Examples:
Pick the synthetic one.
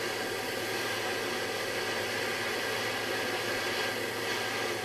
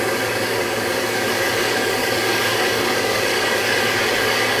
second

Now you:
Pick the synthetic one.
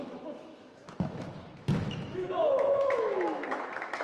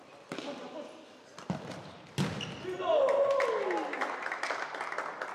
first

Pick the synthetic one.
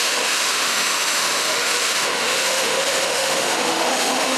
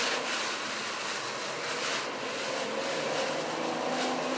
first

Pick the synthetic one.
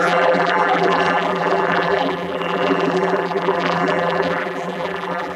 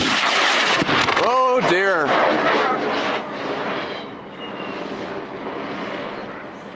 first